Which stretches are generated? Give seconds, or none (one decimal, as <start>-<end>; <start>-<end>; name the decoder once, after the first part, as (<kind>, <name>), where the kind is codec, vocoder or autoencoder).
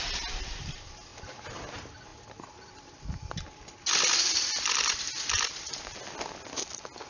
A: none